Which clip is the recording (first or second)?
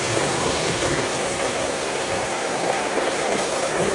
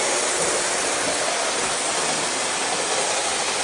second